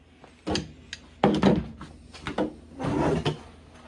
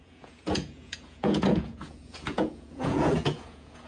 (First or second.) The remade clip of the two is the second